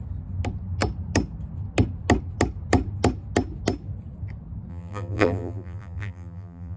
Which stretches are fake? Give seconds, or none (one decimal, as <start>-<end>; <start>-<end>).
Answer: 4.7-6.8